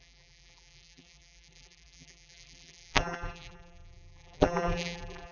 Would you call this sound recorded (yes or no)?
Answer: no